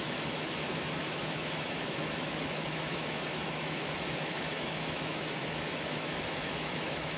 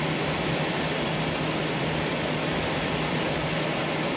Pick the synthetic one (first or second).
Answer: first